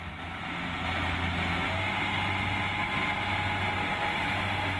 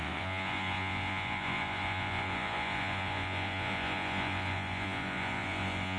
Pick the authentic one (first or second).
first